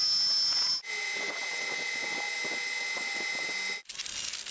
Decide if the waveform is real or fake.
real